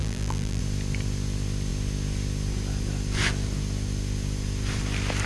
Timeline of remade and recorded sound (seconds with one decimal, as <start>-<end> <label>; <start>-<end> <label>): 0.0-0.6 remade; 0.6-5.3 recorded